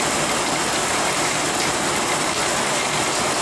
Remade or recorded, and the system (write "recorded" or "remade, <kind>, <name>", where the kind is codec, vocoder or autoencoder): recorded